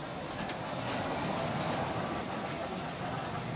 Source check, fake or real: real